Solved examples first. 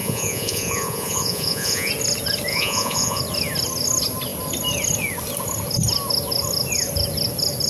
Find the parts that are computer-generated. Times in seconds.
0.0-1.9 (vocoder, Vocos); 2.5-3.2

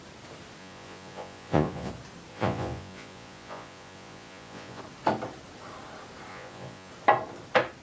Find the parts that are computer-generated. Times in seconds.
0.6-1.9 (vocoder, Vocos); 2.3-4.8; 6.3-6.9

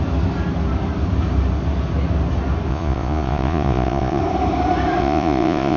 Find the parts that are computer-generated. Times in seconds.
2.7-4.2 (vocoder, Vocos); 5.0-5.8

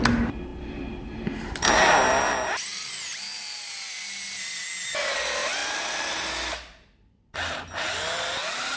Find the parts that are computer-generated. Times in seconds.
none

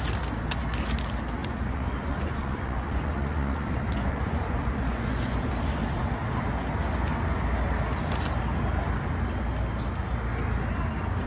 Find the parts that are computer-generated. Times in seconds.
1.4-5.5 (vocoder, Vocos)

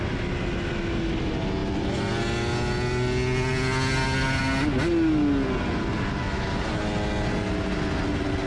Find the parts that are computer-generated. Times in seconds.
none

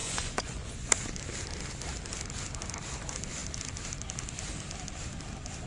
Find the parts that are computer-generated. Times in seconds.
0.0-0.9 (vocoder, Vocos)